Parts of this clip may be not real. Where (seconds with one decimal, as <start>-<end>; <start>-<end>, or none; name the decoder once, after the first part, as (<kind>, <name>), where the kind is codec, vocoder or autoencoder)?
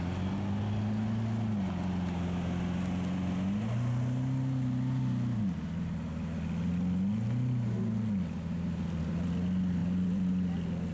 9.8-10.3 (vocoder, BigVGAN v2)